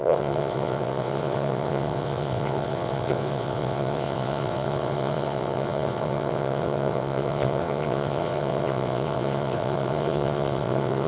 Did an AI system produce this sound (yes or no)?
yes